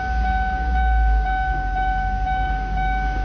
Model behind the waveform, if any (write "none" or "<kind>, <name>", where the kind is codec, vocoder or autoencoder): codec, DAC